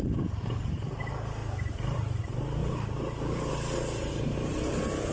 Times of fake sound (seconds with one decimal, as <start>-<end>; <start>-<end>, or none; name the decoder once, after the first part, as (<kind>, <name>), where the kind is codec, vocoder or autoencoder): none